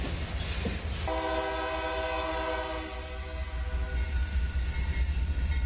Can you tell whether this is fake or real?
real